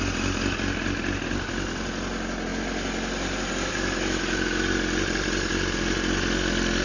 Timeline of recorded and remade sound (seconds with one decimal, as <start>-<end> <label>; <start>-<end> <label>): 0.0-6.8 recorded